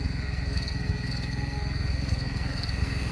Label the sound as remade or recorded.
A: remade